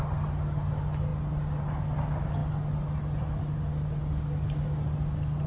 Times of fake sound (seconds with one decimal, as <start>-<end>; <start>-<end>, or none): none